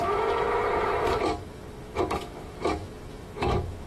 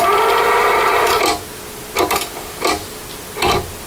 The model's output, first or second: first